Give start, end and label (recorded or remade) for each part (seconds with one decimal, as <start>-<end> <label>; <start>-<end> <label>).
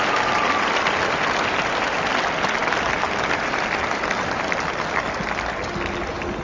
0.0-6.4 recorded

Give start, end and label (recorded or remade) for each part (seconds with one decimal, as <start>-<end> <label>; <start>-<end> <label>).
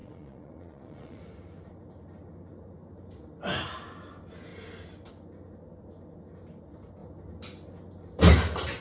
0.0-1.2 remade; 1.2-8.8 recorded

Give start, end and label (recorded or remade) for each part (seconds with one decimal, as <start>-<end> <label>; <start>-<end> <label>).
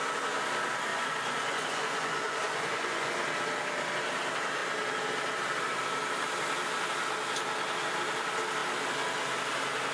0.0-0.9 recorded; 0.9-3.1 remade; 3.1-9.9 recorded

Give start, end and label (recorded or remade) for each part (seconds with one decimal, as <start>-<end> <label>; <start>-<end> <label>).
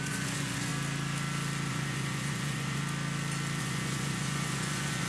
0.0-0.7 remade; 0.7-1.7 recorded; 1.7-2.8 remade; 2.8-3.6 recorded; 3.6-5.1 remade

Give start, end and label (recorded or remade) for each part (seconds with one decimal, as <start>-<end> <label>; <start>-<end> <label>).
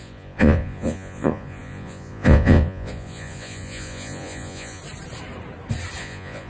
0.0-4.8 remade; 4.8-6.0 recorded; 6.0-6.5 remade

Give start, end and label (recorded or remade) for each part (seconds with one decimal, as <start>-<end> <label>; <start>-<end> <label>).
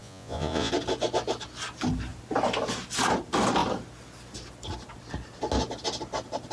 0.0-0.7 remade; 0.7-6.5 recorded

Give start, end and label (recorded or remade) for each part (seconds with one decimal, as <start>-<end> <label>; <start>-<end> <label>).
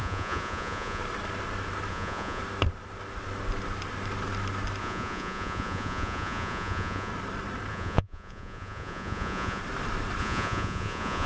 0.0-1.0 remade; 1.0-1.9 recorded; 1.9-2.4 remade; 2.4-4.8 recorded; 4.8-7.1 remade; 7.1-7.7 recorded; 7.7-9.6 remade; 9.6-10.2 recorded; 10.2-11.3 remade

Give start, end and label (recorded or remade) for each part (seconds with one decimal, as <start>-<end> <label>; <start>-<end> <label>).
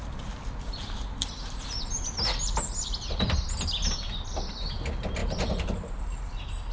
0.0-6.7 recorded